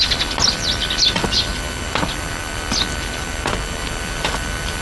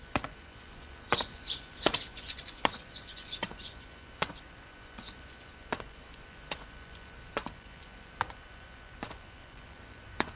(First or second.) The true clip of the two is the first